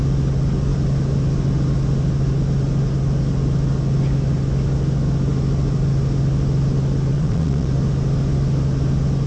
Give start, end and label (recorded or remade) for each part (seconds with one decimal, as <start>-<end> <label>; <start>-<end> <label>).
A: 0.0-7.1 recorded; 7.1-7.7 remade; 7.7-9.3 recorded